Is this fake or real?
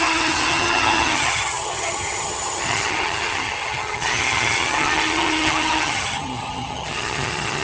fake